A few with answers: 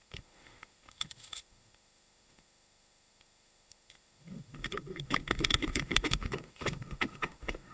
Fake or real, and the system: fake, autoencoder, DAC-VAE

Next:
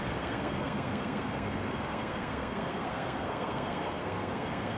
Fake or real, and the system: fake, codec, SNAC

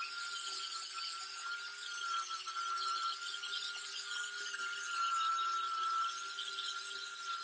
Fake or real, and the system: real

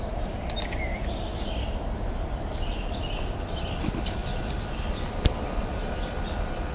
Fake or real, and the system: real